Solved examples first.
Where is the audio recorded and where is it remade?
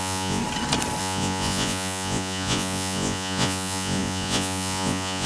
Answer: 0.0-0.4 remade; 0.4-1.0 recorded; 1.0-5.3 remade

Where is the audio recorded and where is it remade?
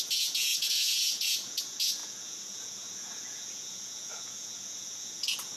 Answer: 0.0-5.6 remade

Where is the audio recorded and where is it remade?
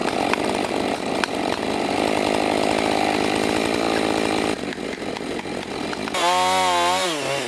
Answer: 0.0-7.5 recorded